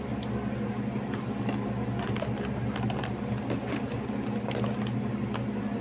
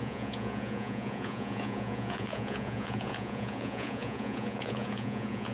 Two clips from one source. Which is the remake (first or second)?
second